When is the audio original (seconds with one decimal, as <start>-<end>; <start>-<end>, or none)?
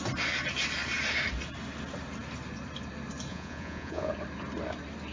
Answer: 0.0-3.3; 4.1-5.1